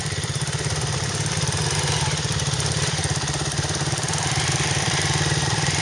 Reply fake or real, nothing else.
fake